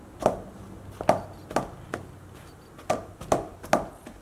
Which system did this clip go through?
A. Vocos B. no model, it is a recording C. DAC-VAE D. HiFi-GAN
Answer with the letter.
B